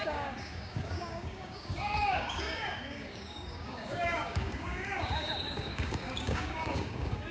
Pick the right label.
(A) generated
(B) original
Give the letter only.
A